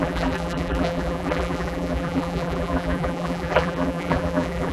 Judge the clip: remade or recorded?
remade